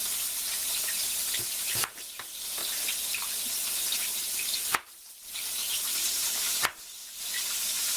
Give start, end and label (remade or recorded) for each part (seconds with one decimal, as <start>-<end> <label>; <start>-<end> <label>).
0.0-1.2 recorded; 1.2-8.0 remade